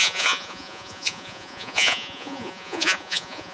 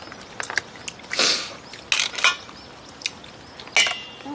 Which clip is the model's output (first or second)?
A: first